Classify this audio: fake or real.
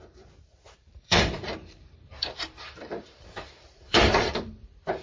fake